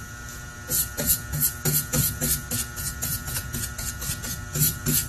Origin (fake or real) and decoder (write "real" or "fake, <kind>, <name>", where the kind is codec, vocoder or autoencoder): real